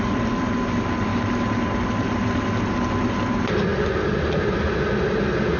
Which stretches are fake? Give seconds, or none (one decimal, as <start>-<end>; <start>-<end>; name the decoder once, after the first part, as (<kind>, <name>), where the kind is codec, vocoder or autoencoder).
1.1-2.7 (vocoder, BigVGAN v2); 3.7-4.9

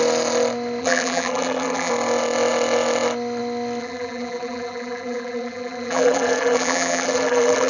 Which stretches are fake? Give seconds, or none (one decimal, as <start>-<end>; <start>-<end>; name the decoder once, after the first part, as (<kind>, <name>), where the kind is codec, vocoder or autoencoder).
0.8-1.9 (vocoder, BigVGAN v2); 3.8-7.7

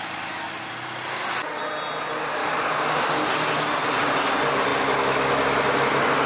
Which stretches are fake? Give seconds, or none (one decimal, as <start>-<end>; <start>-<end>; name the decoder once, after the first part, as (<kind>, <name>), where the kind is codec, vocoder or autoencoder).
2.4-2.9 (codec, DAC)

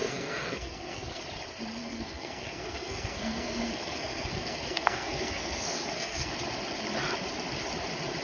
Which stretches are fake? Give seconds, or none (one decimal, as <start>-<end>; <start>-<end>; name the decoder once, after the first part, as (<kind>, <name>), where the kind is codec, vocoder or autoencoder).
0.0-1.2 (codec, SNAC); 1.8-6.3

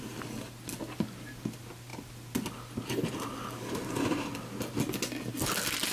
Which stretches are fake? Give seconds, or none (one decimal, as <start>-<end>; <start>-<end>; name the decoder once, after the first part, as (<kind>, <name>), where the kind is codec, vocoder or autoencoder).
none

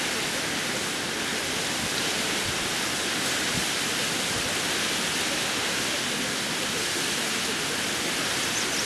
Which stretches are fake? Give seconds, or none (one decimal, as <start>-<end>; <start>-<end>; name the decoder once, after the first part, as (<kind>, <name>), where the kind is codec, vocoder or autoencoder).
0.0-8.9 (vocoder, BigVGAN v2)

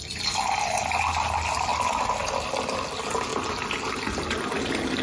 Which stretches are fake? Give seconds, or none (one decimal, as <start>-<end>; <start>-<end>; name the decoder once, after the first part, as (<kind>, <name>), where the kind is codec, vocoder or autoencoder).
none

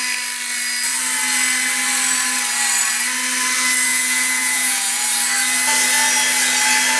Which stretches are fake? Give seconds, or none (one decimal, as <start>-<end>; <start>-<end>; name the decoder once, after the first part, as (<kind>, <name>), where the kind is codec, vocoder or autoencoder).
3.9-5.1 (vocoder, Vocos)